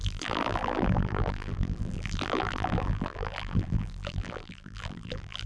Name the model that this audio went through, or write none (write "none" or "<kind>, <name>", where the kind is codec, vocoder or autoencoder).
vocoder, BigVGAN v2